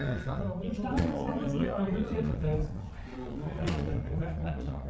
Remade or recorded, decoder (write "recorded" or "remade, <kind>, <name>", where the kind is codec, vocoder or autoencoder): remade, vocoder, Vocos